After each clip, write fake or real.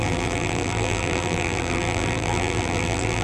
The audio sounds fake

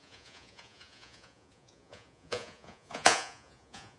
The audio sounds fake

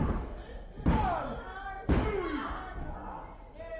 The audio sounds real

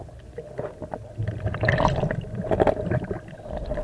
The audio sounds real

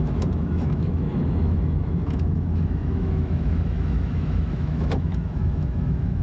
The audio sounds fake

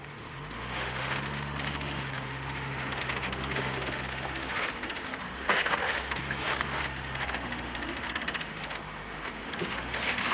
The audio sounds fake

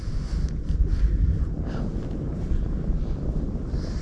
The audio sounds real